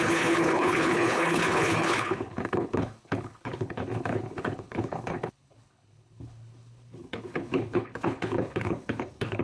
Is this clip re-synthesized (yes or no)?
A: yes